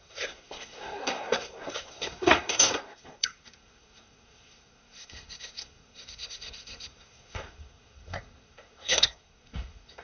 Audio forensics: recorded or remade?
remade